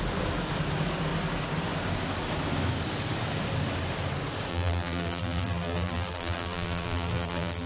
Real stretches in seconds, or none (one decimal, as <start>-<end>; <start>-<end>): 0.0-4.5